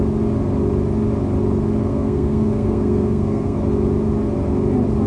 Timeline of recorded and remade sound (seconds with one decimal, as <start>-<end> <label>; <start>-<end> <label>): 0.0-1.9 recorded; 1.9-3.6 remade; 3.6-5.1 recorded